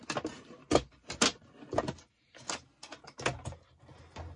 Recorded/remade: recorded